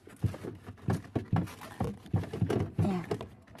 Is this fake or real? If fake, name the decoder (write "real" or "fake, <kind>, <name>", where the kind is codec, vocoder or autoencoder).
real